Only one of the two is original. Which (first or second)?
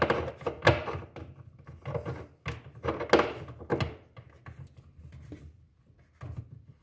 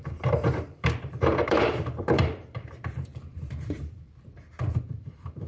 first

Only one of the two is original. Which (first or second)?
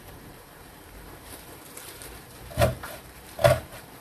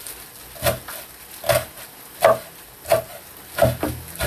second